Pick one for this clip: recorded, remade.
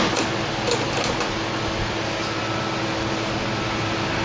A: recorded